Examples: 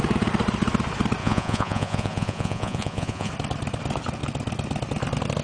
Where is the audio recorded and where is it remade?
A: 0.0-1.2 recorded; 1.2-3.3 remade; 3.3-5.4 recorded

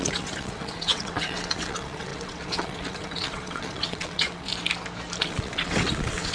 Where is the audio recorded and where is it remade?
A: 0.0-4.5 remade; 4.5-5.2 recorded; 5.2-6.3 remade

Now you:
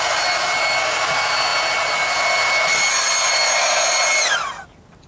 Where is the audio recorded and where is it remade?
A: 0.0-5.1 recorded